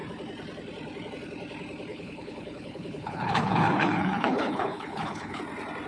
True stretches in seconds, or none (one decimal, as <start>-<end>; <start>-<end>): 0.0-1.9; 5.4-5.9